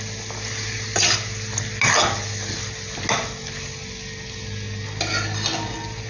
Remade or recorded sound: recorded